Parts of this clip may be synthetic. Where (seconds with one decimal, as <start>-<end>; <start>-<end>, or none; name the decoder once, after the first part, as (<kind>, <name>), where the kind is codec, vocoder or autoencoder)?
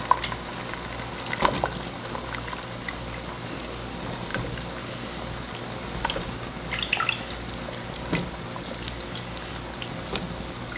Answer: none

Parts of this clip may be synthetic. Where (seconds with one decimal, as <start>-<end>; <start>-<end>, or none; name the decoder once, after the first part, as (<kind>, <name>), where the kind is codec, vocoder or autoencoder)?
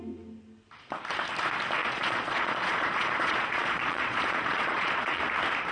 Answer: 1.8-5.2 (vocoder, Vocos)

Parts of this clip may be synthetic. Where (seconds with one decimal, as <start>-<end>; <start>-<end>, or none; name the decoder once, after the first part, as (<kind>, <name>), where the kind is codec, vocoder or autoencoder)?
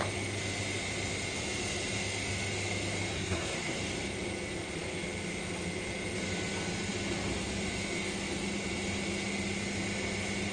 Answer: 3.1-3.8 (codec, SNAC)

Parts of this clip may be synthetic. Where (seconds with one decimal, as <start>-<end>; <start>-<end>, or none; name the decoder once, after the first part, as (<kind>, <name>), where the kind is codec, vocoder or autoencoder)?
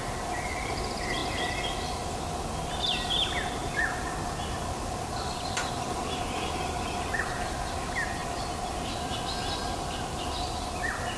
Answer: none